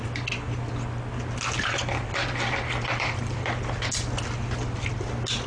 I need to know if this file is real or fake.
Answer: real